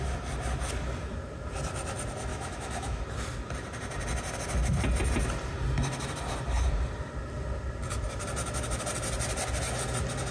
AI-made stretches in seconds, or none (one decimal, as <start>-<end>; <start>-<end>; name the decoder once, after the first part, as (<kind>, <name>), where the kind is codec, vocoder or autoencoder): 2.3-3.0 (autoencoder, DAC-VAE)